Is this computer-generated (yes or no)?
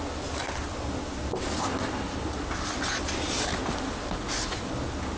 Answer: no